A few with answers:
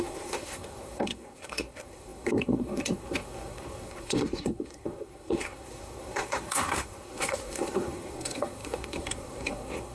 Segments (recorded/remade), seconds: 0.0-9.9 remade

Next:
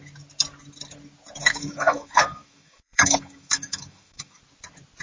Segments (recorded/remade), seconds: 0.0-1.4 recorded; 1.4-4.4 remade; 4.4-5.0 recorded

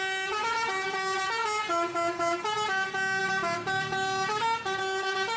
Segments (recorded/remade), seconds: 0.0-5.4 recorded

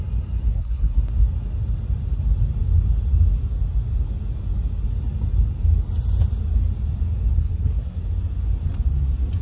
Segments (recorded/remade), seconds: 0.0-0.5 recorded; 0.5-1.0 remade; 1.0-7.3 recorded; 7.3-8.0 remade; 8.0-9.4 recorded

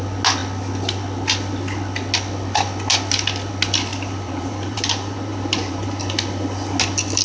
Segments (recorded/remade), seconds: 0.0-3.9 recorded; 3.9-6.0 remade; 6.0-7.2 recorded

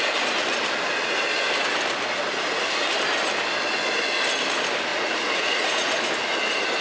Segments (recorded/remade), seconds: 0.0-4.9 recorded; 4.9-6.1 remade; 6.1-6.8 recorded

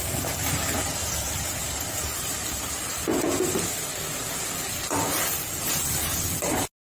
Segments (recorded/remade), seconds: 0.0-1.0 recorded; 1.0-3.7 remade; 3.7-6.8 recorded